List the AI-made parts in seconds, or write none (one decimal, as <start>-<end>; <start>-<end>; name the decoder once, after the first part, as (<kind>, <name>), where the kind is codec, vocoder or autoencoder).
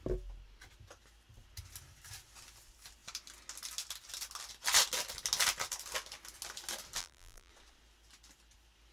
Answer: 7.0-7.5 (vocoder, BigVGAN v2)